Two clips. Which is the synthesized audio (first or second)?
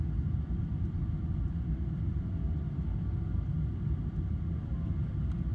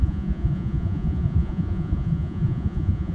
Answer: second